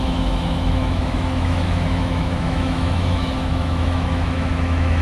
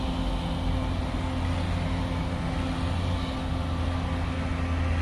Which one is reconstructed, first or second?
first